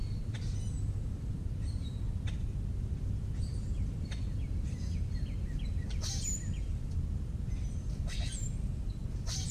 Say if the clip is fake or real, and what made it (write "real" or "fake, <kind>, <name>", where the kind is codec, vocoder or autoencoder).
fake, vocoder, BigVGAN v2